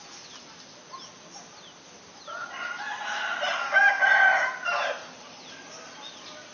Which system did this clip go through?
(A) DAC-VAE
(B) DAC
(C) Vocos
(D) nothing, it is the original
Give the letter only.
D